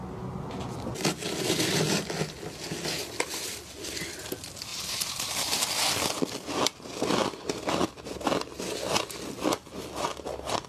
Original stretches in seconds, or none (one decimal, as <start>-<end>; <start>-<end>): 0.0-4.7; 5.6-10.7

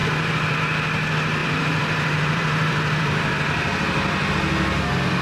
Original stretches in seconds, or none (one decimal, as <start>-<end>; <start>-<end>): 0.6-1.4; 4.3-5.2